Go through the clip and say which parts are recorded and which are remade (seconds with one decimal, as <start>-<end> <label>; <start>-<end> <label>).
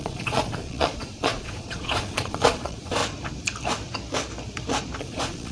0.0-3.0 remade; 3.0-5.0 recorded; 5.0-5.5 remade